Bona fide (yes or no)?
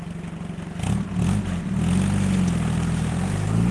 yes